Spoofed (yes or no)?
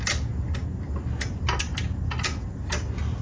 no